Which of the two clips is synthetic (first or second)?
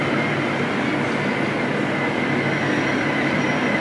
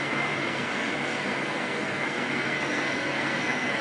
second